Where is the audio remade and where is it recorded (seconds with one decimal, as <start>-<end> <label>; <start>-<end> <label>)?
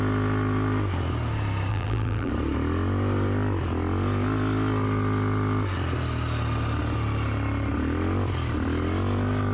0.0-1.7 recorded; 1.7-2.3 remade; 2.3-9.5 recorded